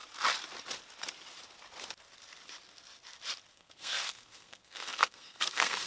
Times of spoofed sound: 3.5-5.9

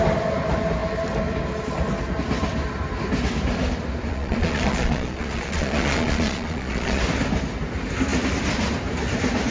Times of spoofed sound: 4.1-7.0

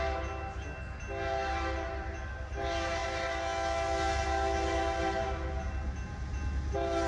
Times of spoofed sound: none

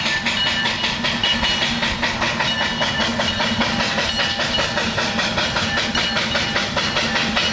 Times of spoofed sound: none

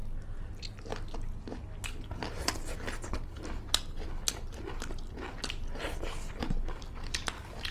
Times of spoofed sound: none

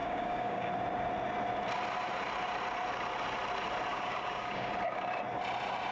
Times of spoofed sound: 0.0-0.7; 3.9-4.7